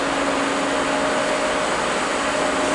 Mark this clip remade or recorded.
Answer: recorded